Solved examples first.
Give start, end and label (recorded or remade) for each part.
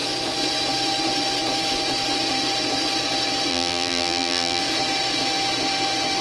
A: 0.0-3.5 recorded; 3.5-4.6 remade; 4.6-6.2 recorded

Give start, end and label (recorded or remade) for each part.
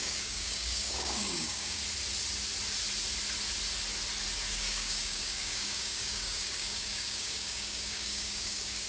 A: 0.0-1.8 remade; 1.8-4.5 recorded; 4.5-8.9 remade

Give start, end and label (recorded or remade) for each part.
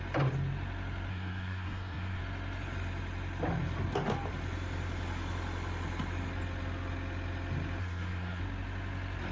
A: 0.0-1.1 recorded; 1.1-2.2 remade; 2.2-7.8 recorded; 7.8-8.4 remade; 8.4-9.3 recorded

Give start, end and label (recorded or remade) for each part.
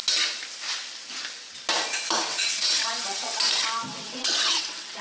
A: 0.0-2.3 recorded; 2.3-3.4 remade; 3.4-3.9 recorded; 3.9-5.0 remade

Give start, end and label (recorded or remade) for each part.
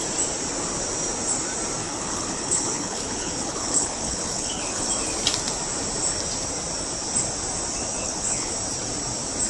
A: 0.0-1.8 recorded; 1.8-4.9 remade; 4.9-8.0 recorded; 8.0-8.5 remade; 8.5-9.5 recorded